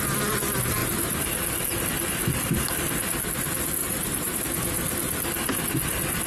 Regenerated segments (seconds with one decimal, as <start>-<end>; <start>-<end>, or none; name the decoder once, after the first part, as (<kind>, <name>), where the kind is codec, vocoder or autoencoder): 3.8-4.4 (vocoder, BigVGAN v2)